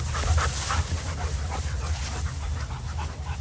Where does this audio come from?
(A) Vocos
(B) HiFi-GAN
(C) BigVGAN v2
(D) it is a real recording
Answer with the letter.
D